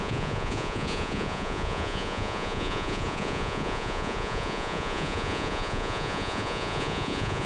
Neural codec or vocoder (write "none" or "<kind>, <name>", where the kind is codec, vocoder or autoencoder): vocoder, Vocos